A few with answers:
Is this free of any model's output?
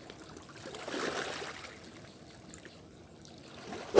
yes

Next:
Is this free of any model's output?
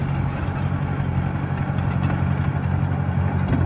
yes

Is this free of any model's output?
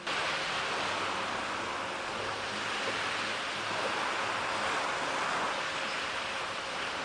yes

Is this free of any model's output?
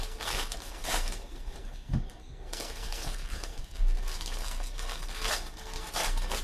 no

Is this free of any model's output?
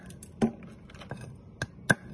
yes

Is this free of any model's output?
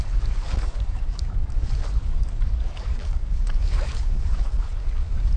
no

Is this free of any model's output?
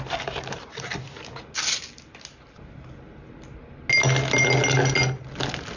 yes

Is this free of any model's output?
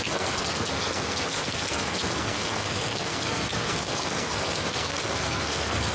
no